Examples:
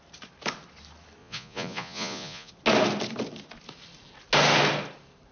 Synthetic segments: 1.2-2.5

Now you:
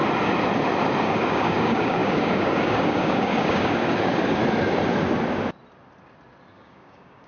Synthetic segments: 1.0-4.4; 6.5-7.3

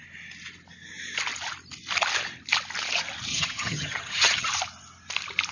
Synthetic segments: 3.3-4.5